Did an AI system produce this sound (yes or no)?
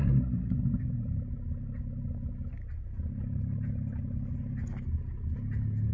no